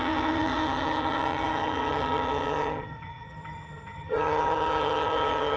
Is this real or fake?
fake